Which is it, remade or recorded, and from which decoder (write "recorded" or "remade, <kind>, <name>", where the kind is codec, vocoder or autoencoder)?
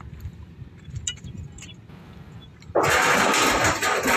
recorded